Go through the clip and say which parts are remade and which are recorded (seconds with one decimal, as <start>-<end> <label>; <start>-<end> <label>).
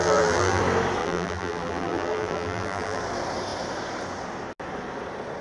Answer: 0.0-0.6 remade; 0.6-1.0 recorded; 1.0-3.0 remade; 3.0-5.4 recorded